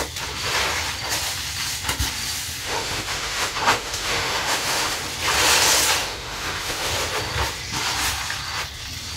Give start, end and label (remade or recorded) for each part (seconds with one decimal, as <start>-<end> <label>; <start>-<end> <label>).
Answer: 0.0-2.6 recorded; 2.6-5.0 remade; 5.0-6.0 recorded; 6.0-6.9 remade; 6.9-9.2 recorded

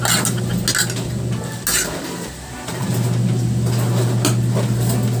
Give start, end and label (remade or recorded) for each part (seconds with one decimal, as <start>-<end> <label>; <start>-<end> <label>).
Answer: 0.0-1.7 recorded; 1.7-2.8 remade; 2.8-5.2 recorded

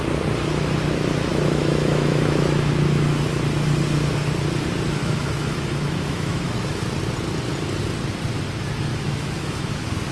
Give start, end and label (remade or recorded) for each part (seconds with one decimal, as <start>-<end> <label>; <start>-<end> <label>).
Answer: 0.0-1.3 recorded; 1.3-2.7 remade; 2.7-5.0 recorded; 5.0-6.8 remade; 6.8-8.9 recorded; 8.9-9.7 remade; 9.7-10.1 recorded

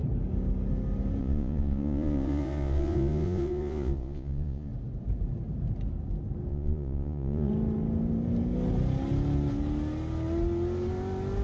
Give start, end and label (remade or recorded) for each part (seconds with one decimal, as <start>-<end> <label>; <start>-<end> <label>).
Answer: 0.0-1.2 recorded; 1.2-4.7 remade; 4.7-6.5 recorded; 6.5-7.5 remade; 7.5-11.4 recorded

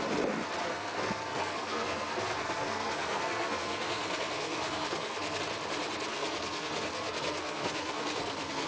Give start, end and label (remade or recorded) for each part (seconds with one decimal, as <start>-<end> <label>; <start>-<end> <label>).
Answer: 0.0-0.7 recorded; 0.7-5.4 remade; 5.4-6.1 recorded; 6.1-8.7 remade

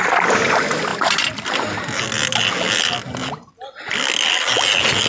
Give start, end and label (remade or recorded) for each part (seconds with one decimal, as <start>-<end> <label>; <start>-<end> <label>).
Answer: 0.0-5.1 recorded

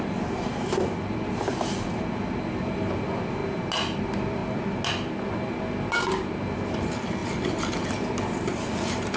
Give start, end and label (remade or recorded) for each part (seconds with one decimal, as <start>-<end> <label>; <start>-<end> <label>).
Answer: 0.0-3.4 remade; 3.4-4.0 recorded; 4.0-4.4 remade; 4.4-5.3 recorded; 5.3-9.2 remade